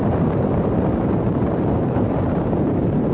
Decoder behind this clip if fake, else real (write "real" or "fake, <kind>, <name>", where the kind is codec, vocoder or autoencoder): fake, vocoder, BigVGAN v2